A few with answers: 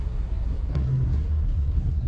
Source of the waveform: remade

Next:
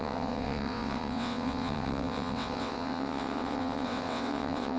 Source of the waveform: remade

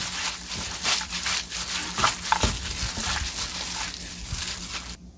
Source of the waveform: recorded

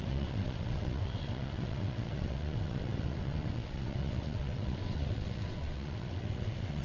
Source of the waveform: remade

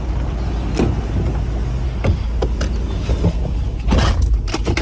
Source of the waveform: recorded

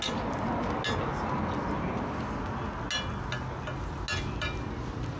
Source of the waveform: recorded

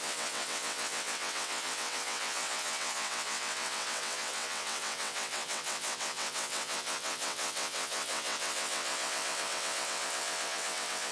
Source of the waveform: remade